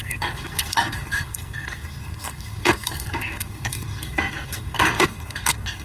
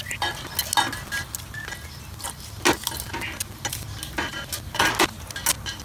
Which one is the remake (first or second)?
first